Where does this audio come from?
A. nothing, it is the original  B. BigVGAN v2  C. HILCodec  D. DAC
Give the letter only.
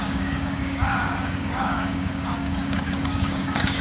D